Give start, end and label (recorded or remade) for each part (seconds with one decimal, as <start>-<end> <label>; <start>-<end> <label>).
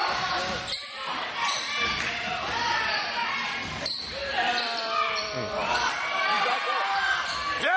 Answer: 0.0-4.2 recorded; 4.2-5.9 remade; 5.9-7.8 recorded